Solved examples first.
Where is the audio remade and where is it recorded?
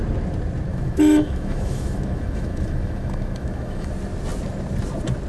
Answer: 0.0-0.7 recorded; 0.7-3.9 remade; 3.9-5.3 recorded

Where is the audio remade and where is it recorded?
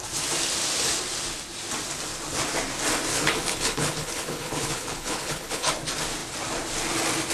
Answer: 0.0-3.1 recorded; 3.1-5.7 remade; 5.7-7.3 recorded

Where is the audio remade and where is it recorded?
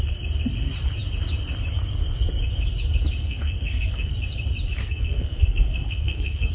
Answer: 0.0-3.2 recorded; 3.2-4.1 remade; 4.1-4.8 recorded; 4.8-6.5 remade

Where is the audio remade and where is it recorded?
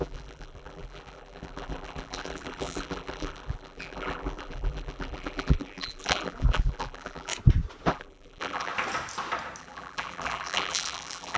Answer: 0.0-7.3 remade; 7.3-7.9 recorded; 7.9-8.7 remade; 8.7-9.6 recorded; 9.6-11.4 remade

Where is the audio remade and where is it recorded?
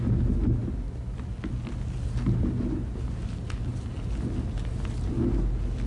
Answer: 0.0-5.9 recorded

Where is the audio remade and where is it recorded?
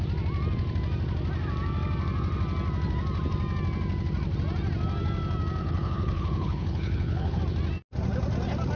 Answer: 0.0-5.6 recorded; 5.6-7.4 remade; 7.4-8.8 recorded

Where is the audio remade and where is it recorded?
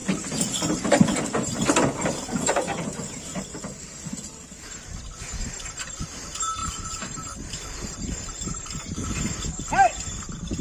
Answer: 0.0-3.3 recorded; 3.3-4.0 remade; 4.0-6.6 recorded; 6.6-8.6 remade; 8.6-10.6 recorded